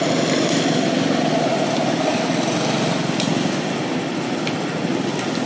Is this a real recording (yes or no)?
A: yes